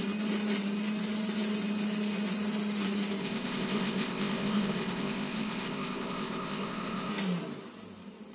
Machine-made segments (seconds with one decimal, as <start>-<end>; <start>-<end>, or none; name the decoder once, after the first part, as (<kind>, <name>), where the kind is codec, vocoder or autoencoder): 3.2-7.1 (codec, ZipCodec)